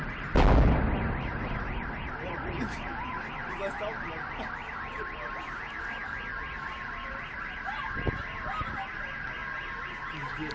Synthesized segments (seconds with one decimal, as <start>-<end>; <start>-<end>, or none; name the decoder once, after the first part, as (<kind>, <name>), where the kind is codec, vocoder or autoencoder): 1.3-3.2 (vocoder, BigVGAN v2)